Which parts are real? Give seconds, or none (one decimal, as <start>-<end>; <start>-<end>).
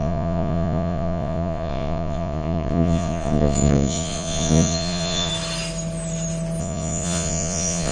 5.3-6.6